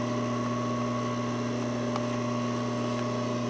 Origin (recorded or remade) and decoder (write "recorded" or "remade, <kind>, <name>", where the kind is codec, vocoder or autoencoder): recorded